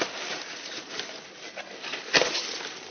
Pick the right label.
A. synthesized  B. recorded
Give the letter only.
B